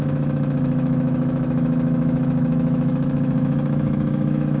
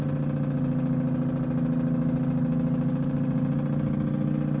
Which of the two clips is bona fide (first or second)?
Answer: second